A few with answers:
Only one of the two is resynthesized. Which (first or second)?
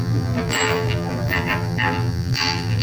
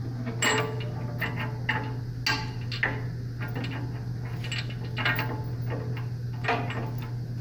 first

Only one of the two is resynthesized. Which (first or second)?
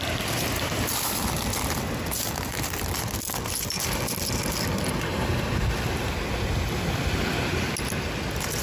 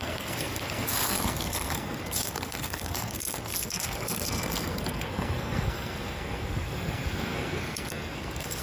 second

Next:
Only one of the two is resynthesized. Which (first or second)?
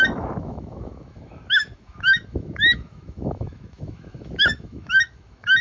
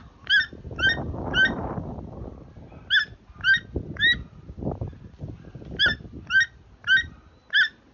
first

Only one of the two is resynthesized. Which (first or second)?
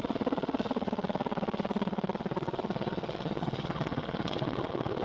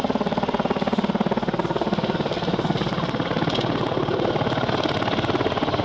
first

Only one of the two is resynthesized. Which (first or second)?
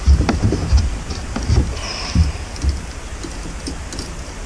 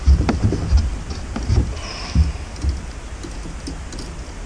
first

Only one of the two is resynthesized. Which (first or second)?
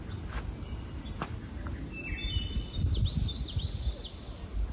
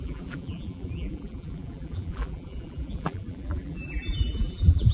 second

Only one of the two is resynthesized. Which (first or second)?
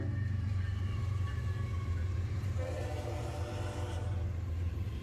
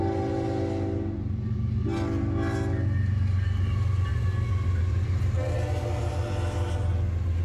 first